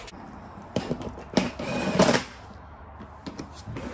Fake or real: real